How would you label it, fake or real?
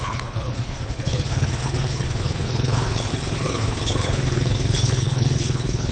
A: fake